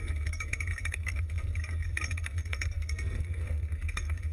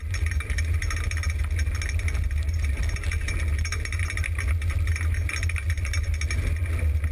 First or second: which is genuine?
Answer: second